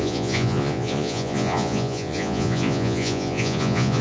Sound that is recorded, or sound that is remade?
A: remade